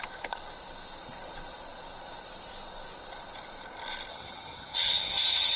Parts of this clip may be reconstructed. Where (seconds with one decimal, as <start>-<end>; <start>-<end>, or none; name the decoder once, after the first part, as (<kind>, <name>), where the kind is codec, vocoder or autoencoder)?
4.1-5.6 (vocoder, HiFi-GAN)